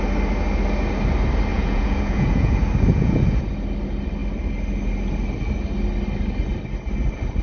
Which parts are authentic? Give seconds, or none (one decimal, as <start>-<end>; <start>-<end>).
0.0-1.5; 2.5-2.9; 3.5-7.4